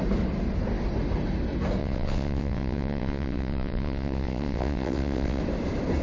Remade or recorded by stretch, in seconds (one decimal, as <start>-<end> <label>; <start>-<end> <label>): 0.0-1.8 recorded; 1.8-5.4 remade; 5.4-6.0 recorded